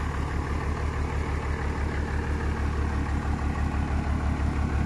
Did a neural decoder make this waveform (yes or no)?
no